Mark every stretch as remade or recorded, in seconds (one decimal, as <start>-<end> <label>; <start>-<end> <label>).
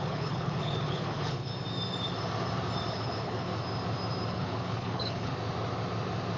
0.0-1.5 remade; 1.5-2.9 recorded; 2.9-3.5 remade; 3.5-4.3 recorded; 4.3-5.3 remade; 5.3-6.4 recorded